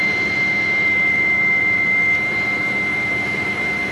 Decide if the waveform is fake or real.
fake